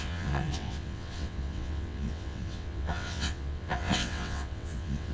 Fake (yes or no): yes